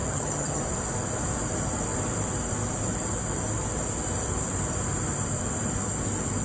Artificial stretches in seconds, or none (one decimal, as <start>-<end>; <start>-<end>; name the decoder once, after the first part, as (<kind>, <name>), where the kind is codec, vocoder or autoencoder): 0.0-0.6 (vocoder, HiFi-GAN)